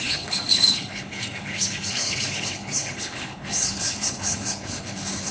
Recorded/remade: remade